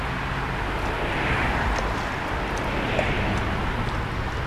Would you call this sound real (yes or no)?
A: yes